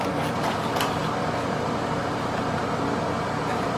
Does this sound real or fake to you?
real